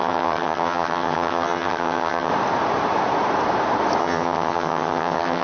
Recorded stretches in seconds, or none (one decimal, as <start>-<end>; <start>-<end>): 2.3-4.0